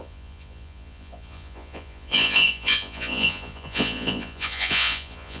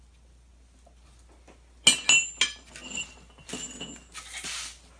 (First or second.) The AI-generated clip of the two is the first